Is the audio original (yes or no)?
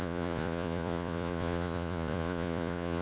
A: no